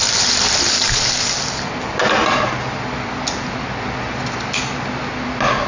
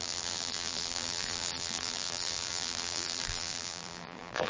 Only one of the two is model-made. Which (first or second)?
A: second